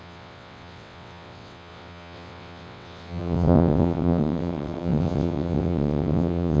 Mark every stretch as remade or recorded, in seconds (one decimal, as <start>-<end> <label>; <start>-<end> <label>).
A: 0.0-6.6 remade